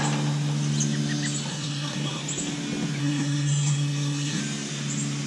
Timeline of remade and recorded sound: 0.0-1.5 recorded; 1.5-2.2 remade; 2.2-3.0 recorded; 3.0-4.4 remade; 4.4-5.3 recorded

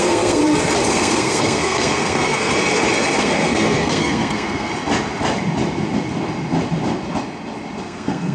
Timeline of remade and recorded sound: 0.0-0.4 remade; 0.4-0.9 recorded; 0.9-2.5 remade; 2.5-3.2 recorded; 3.2-4.7 remade; 4.7-7.8 recorded; 7.8-8.3 remade

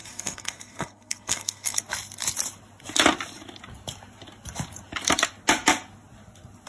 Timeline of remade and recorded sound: 0.0-1.8 remade; 1.8-6.7 recorded

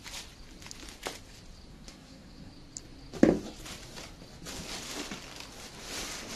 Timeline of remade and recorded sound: 0.0-1.7 recorded; 1.7-2.5 remade; 2.5-6.4 recorded

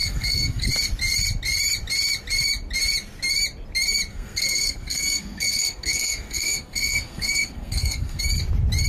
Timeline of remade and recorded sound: 0.0-0.7 remade; 0.7-4.1 recorded; 4.1-8.2 remade; 8.2-8.9 recorded

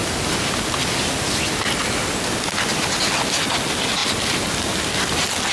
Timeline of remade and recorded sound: 0.0-5.5 recorded

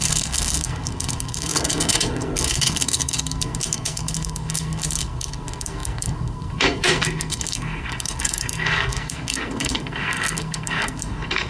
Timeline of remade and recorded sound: 0.0-11.5 remade

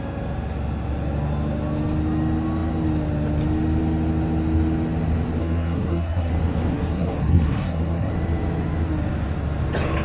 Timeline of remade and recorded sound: 0.0-5.4 recorded; 5.4-6.3 remade; 6.3-6.7 recorded; 6.7-8.1 remade; 8.1-10.0 recorded